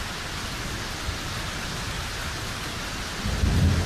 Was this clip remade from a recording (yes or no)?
no